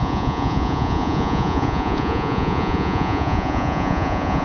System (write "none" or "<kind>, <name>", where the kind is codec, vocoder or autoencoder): vocoder, Vocos